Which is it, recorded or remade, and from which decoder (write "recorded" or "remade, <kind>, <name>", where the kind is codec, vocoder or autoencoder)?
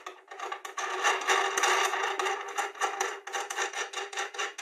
recorded